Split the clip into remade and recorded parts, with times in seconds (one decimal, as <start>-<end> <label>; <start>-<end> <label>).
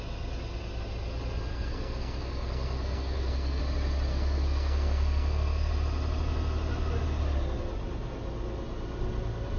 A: 0.0-1.5 recorded; 1.5-3.6 remade; 3.6-4.1 recorded; 4.1-5.7 remade; 5.7-9.6 recorded